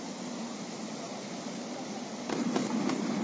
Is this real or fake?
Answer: fake